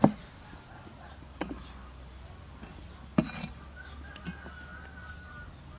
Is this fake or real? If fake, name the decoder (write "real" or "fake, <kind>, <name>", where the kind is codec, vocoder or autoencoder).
real